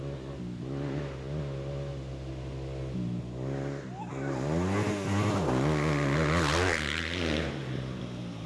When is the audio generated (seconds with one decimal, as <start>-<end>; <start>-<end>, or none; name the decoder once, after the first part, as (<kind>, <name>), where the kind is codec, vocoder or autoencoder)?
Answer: none